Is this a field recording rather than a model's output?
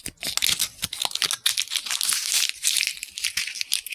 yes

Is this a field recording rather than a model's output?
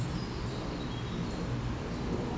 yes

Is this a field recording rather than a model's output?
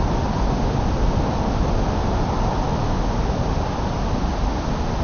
yes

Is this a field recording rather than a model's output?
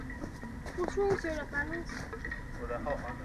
yes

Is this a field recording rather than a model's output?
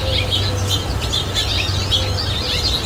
yes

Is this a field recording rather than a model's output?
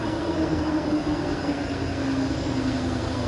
no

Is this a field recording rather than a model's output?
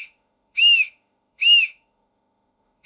no